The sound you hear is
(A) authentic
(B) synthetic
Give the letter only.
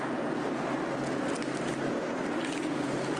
A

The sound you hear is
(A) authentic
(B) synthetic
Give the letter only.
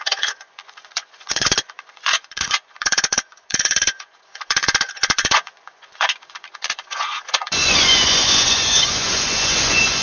B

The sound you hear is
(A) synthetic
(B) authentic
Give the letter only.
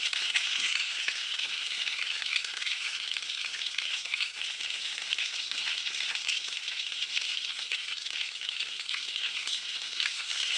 A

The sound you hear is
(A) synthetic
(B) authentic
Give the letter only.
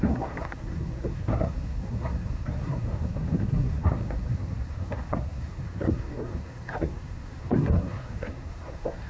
A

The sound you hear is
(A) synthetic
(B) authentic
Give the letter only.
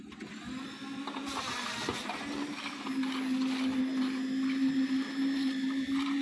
B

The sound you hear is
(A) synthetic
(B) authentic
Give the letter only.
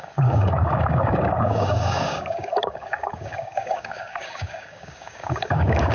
A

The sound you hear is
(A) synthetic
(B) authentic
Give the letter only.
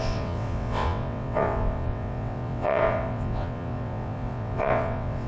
A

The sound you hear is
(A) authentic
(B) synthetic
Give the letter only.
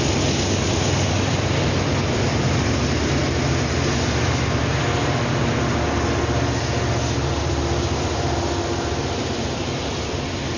A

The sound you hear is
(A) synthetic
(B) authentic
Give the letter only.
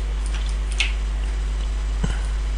B